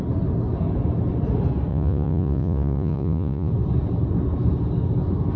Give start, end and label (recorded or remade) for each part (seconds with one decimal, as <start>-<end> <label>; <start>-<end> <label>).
0.0-1.7 recorded; 1.7-3.5 remade; 3.5-5.4 recorded